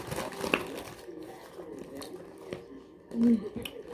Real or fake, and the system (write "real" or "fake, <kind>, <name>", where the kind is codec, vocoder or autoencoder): real